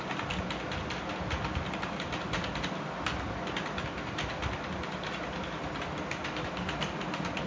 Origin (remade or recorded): recorded